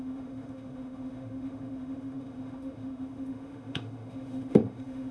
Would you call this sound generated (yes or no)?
yes